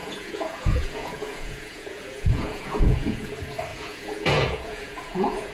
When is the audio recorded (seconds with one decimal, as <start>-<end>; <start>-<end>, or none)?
3.3-3.7